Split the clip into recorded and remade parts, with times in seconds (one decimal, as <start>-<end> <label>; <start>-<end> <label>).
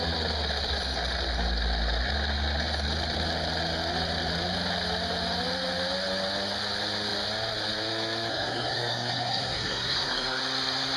0.0-8.3 recorded; 8.3-10.4 remade; 10.4-11.0 recorded